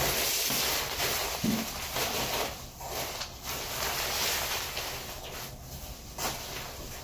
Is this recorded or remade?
recorded